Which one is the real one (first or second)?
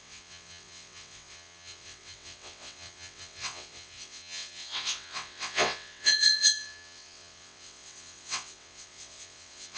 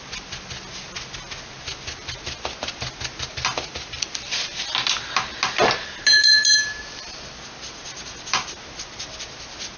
second